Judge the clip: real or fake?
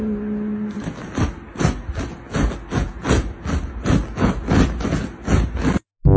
real